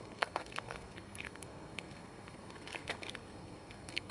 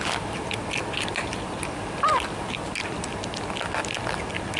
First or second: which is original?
second